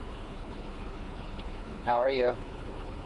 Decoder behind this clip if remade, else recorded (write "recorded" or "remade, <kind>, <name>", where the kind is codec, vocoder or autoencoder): remade, codec, HILCodec